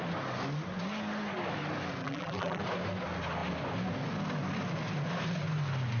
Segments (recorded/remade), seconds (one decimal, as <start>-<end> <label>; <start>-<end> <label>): 0.0-2.0 recorded; 2.0-2.6 remade; 2.6-6.0 recorded

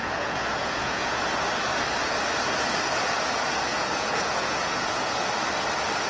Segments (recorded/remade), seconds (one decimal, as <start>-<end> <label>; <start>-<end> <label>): 0.0-1.2 remade; 1.2-3.7 recorded; 3.7-5.3 remade; 5.3-6.1 recorded

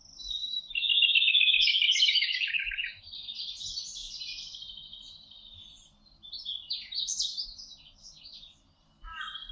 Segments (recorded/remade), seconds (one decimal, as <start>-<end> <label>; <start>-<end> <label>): 0.0-0.4 recorded; 0.4-3.1 remade; 3.1-9.5 recorded

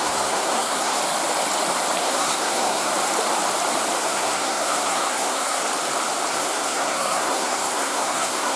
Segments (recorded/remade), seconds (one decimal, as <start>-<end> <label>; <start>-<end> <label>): 0.0-1.0 remade; 1.0-2.0 recorded; 2.0-2.9 remade; 2.9-4.0 recorded; 4.0-5.6 remade; 5.6-6.3 recorded; 6.3-8.6 remade

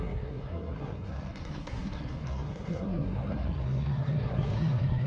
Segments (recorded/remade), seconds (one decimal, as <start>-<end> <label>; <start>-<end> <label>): 0.0-5.1 remade

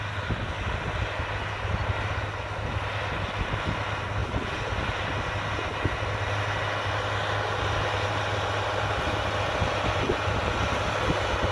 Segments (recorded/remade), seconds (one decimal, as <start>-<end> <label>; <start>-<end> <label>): 0.0-11.5 recorded

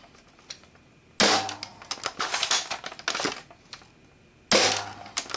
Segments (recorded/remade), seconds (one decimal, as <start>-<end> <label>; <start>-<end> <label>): 0.0-5.4 recorded

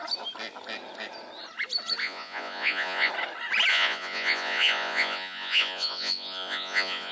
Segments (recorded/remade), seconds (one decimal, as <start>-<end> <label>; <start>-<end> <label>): 0.0-2.0 recorded; 2.0-3.1 remade; 3.1-3.7 recorded; 3.7-7.1 remade